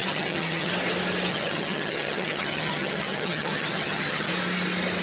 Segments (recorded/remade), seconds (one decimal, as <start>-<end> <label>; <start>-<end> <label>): 0.0-0.7 remade; 0.7-1.3 recorded; 1.3-4.3 remade; 4.3-5.0 recorded

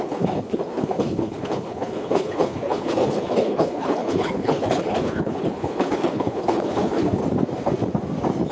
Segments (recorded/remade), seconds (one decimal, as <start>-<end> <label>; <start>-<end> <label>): 0.0-7.2 remade; 7.2-8.5 recorded